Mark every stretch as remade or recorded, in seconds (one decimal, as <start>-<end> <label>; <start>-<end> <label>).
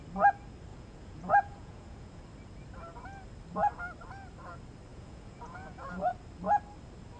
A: 0.0-0.7 recorded; 0.7-2.2 remade; 2.2-4.9 recorded; 4.9-6.1 remade; 6.1-7.2 recorded